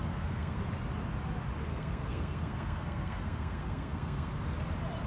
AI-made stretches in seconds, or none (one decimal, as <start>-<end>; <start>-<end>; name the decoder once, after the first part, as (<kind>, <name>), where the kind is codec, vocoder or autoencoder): 0.0-0.6 (codec, SNAC); 1.7-4.4

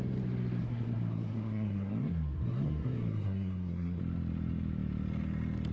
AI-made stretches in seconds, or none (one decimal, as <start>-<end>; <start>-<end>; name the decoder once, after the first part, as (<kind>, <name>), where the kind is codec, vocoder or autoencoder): 0.6-4.0 (codec, SNAC)